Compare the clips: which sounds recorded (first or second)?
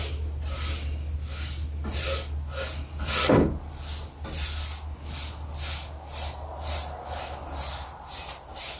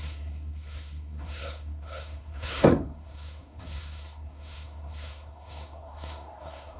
first